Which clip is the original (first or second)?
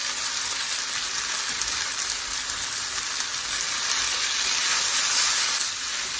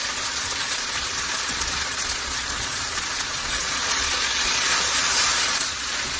first